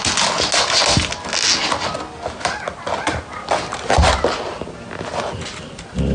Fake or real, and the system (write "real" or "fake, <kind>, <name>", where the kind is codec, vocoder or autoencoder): real